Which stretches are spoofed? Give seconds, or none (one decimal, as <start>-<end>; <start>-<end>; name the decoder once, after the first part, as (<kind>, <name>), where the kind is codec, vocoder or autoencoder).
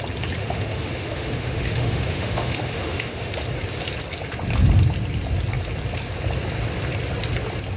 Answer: 0.4-3.3 (autoencoder, DAC-VAE)